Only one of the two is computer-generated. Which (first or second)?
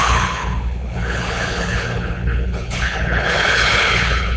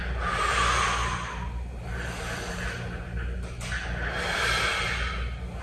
first